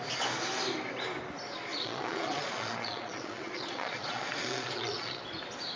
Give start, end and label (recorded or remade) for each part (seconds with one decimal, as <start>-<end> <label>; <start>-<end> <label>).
0.0-1.7 recorded; 1.7-5.2 remade; 5.2-5.8 recorded